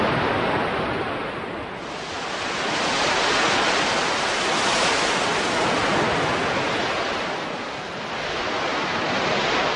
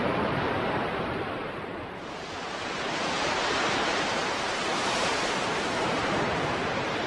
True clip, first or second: first